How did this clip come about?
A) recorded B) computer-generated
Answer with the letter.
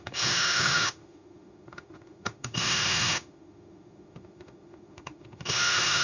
B